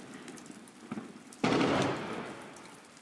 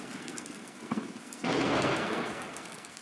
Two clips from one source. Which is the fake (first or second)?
second